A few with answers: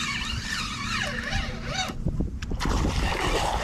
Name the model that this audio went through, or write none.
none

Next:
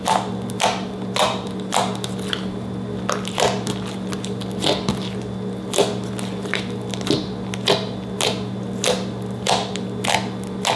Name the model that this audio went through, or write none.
none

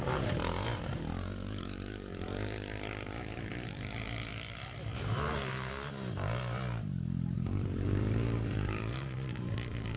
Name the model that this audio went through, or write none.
vocoder, BigVGAN v2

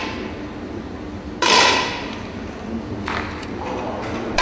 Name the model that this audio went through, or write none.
none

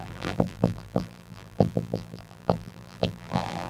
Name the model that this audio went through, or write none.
vocoder, BigVGAN v2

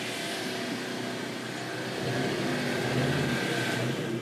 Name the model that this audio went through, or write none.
none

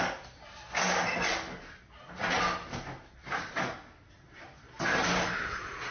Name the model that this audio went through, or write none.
none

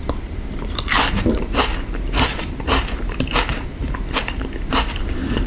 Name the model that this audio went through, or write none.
vocoder, BigVGAN v2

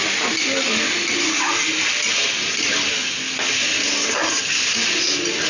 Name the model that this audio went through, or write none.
none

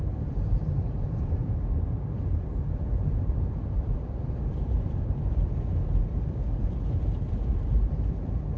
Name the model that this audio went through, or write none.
vocoder, BigVGAN v2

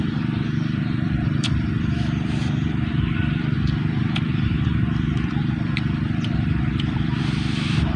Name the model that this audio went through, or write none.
vocoder, BigVGAN v2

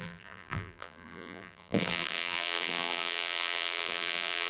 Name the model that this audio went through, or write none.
vocoder, BigVGAN v2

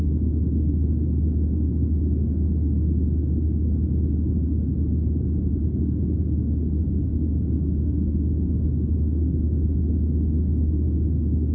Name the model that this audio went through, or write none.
none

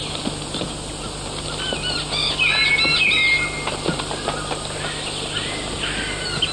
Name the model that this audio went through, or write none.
none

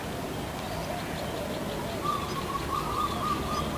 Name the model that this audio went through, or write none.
none